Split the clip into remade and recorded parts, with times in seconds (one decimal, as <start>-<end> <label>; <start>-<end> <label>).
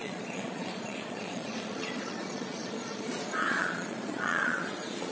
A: 0.0-5.1 remade